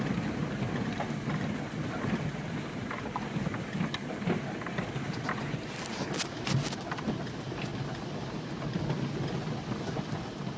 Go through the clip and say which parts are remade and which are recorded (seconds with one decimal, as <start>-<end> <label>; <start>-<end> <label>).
0.0-10.6 recorded